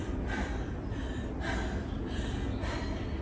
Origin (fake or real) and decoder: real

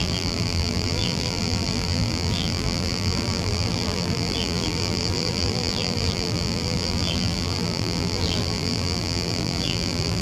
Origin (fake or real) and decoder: fake, vocoder, BigVGAN v2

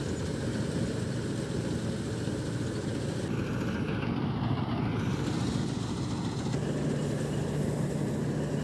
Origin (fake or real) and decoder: real